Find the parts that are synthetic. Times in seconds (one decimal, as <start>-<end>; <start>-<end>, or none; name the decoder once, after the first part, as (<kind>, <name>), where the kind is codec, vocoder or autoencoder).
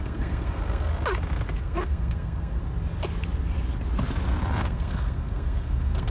0.0-0.9 (codec, SNAC); 1.6-2.6; 4.6-6.1